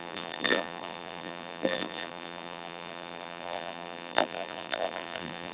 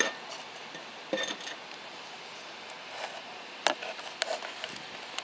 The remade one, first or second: first